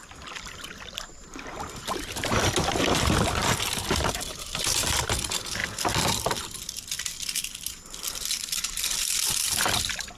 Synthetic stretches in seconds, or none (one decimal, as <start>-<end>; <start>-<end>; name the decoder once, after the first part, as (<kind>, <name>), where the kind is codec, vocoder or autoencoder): 0.0-3.4 (vocoder, BigVGAN v2); 4.6-5.6; 8.1-10.2